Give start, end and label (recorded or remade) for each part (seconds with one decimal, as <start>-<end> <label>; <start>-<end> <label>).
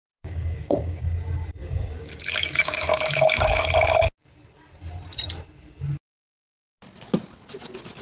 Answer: 0.0-1.0 remade; 1.0-1.6 recorded; 1.6-3.5 remade; 3.5-8.0 recorded